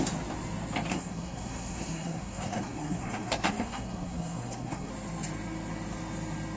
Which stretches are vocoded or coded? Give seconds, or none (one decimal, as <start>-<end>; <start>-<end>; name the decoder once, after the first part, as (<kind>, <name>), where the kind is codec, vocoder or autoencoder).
0.9-4.9 (codec, SNAC)